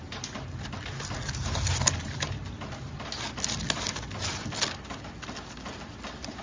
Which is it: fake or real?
real